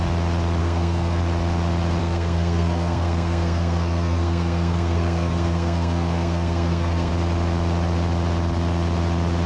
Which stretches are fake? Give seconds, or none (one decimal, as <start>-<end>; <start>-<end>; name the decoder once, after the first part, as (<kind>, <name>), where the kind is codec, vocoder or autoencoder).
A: 0.6-1.2 (codec, SNAC); 2.0-7.1